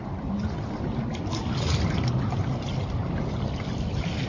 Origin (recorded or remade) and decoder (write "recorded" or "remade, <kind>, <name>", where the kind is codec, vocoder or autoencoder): recorded